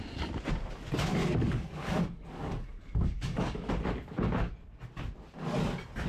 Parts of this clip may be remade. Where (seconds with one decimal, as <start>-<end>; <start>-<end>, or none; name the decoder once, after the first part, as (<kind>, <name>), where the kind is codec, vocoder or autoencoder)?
1.2-3.7 (codec, DAC)